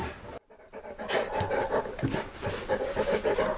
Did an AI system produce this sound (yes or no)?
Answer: no